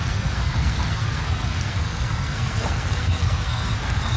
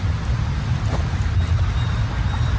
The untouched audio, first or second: second